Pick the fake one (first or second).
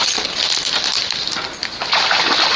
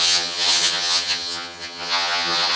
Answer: second